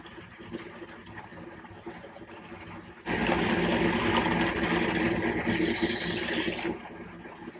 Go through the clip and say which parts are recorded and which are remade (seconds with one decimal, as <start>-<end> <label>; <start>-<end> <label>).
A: 0.0-7.6 recorded

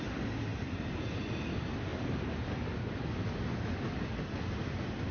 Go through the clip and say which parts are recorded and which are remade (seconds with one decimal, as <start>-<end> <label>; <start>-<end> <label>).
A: 0.0-0.5 recorded; 0.5-1.2 remade; 1.2-1.9 recorded; 1.9-3.1 remade; 3.1-5.1 recorded

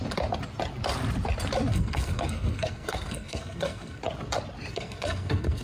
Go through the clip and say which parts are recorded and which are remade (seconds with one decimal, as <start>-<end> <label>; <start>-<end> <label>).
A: 0.0-1.7 recorded; 1.7-4.0 remade; 4.0-4.7 recorded; 4.7-5.6 remade

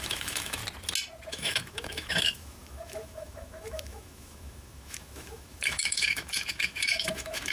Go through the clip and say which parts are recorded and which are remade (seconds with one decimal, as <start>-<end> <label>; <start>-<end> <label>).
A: 0.0-0.6 remade; 0.6-1.3 recorded; 1.3-7.5 remade

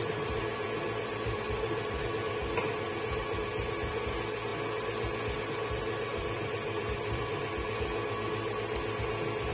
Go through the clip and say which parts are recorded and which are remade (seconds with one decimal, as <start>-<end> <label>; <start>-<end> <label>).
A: 0.0-2.6 remade; 2.6-6.1 recorded; 6.1-7.5 remade; 7.5-9.5 recorded